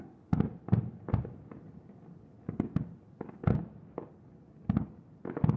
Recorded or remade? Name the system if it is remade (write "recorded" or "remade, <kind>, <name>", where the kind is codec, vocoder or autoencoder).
recorded